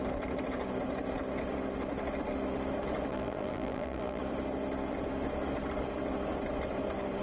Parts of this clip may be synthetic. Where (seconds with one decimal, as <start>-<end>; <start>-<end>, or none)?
3.1-4.2